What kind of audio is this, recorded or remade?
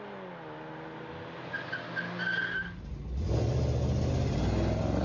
recorded